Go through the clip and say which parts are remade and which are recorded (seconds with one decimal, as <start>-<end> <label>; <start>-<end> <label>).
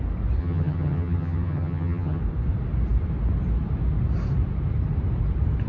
0.0-0.4 recorded; 0.4-2.2 remade; 2.2-5.7 recorded